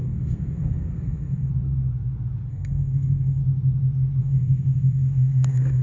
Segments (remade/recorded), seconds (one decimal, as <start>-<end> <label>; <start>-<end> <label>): 0.0-1.5 remade; 1.5-2.5 recorded; 2.5-3.4 remade; 3.4-4.2 recorded; 4.2-5.8 remade